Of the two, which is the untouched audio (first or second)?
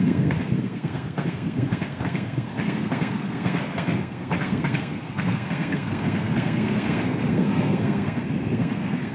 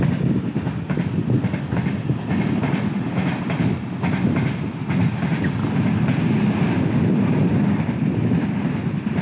second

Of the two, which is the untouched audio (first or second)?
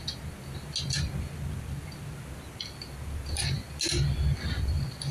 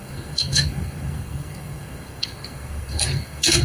first